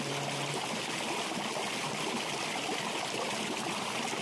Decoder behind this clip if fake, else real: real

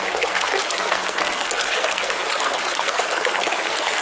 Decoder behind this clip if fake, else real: fake, codec, SNAC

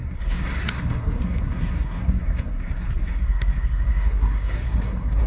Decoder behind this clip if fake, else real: fake, codec, SNAC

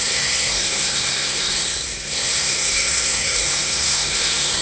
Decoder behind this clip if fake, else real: fake, codec, SNAC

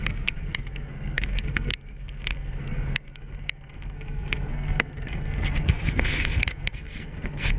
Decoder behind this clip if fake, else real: fake, codec, SNAC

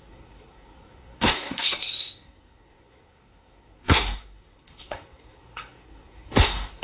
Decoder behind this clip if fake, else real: fake, codec, SNAC